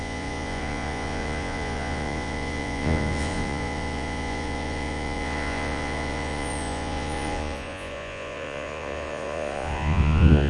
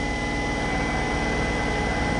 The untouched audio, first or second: second